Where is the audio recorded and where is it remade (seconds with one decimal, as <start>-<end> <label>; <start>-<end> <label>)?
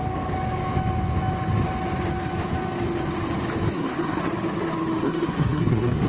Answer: 0.0-3.7 recorded; 3.7-4.2 remade; 4.2-5.0 recorded; 5.0-6.1 remade